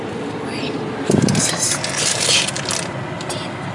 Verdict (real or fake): real